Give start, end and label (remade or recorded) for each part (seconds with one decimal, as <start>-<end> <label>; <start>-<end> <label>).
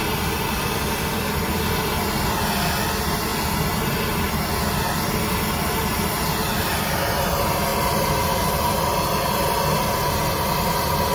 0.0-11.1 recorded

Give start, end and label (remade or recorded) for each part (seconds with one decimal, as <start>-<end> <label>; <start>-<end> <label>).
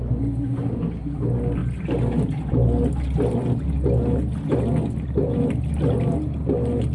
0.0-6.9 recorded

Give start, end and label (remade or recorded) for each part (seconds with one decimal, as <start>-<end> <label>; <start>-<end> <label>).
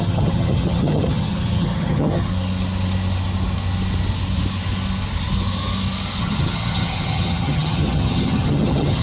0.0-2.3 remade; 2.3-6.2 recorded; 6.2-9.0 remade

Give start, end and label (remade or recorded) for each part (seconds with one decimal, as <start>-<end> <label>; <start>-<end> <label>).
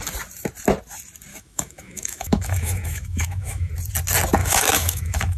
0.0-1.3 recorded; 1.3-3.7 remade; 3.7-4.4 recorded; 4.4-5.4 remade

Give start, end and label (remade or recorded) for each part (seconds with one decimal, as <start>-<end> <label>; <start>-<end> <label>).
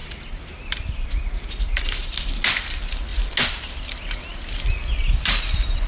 0.0-5.9 recorded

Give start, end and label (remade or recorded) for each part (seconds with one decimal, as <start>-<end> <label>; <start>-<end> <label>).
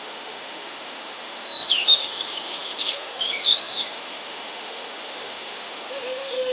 0.0-6.5 remade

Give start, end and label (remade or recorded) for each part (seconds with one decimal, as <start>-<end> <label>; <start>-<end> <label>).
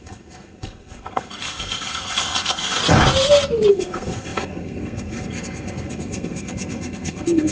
0.0-2.8 remade; 2.8-3.7 recorded; 3.7-7.5 remade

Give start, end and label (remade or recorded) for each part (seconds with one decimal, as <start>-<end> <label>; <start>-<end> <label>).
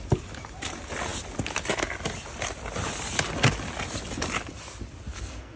0.0-5.1 recorded; 5.1-5.6 remade